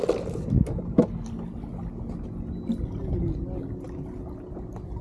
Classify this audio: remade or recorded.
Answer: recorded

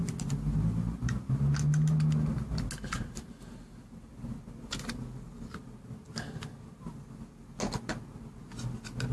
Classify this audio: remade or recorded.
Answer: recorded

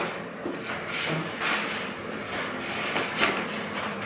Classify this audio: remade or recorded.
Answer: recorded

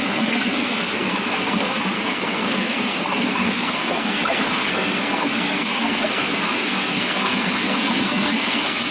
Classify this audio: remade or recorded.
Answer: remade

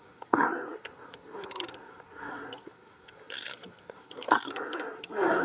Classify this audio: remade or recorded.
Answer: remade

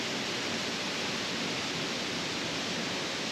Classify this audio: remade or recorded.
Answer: recorded